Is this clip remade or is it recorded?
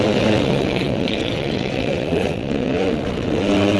remade